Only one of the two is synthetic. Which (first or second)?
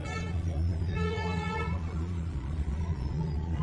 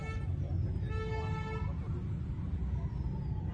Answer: first